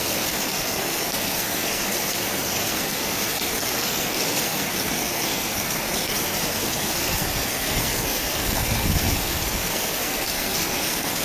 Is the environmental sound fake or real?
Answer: fake